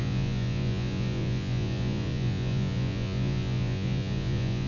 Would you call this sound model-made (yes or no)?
yes